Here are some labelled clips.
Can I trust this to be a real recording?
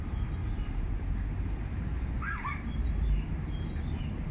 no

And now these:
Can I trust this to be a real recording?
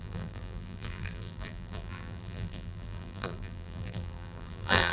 no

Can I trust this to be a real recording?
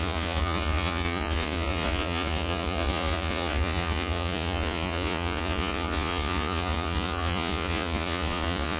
no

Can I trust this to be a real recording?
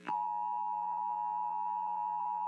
no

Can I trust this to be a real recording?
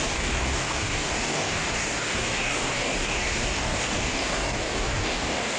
no